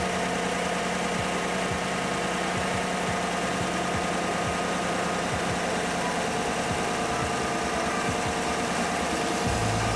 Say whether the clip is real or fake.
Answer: real